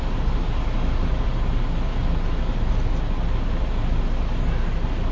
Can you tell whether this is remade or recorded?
recorded